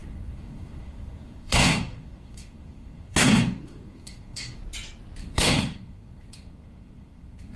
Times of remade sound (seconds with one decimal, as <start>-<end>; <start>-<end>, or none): 0.0-4.6; 5.2-7.6